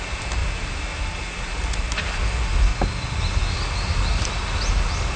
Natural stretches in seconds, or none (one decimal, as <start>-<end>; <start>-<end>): 0.0-5.2